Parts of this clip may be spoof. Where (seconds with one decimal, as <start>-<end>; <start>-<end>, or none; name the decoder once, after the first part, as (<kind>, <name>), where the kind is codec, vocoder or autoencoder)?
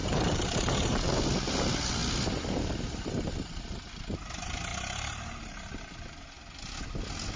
0.0-1.0 (vocoder, BigVGAN v2); 4.7-5.8